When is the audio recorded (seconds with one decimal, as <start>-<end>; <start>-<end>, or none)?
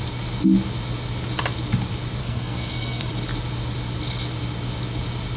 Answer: 0.0-2.2; 3.1-5.4